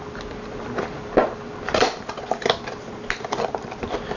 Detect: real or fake real